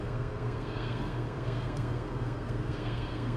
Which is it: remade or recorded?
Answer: remade